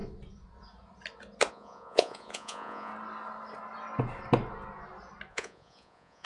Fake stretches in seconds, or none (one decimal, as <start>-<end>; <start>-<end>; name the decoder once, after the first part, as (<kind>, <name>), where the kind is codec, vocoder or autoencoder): 1.5-2.9 (vocoder, Vocos); 5.3-6.2